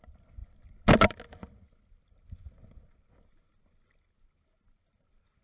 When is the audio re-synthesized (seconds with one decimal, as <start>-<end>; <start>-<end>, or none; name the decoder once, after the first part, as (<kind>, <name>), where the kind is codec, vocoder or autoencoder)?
none